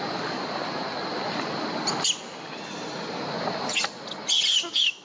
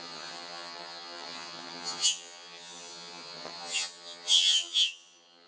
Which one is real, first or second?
first